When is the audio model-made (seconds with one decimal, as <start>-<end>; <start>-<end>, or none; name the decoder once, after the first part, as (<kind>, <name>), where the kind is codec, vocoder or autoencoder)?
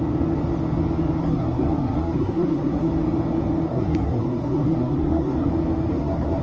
1.2-2.9 (codec, SNAC); 3.7-5.5; 5.9-6.4